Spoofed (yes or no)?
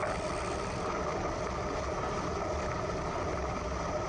no